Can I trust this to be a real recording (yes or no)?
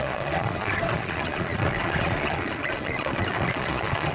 no